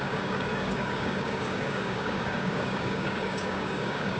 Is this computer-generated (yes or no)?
yes